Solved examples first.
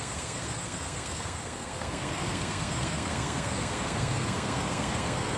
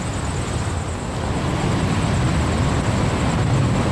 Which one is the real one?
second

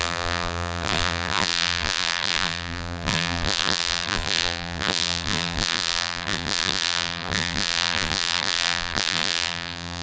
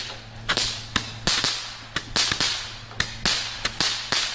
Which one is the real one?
second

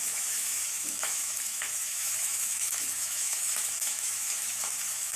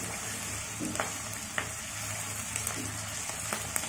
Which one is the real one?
second